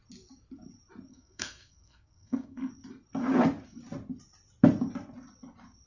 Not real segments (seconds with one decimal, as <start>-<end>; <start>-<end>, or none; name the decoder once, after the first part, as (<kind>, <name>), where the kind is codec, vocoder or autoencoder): 1.1-2.7 (codec, SNAC)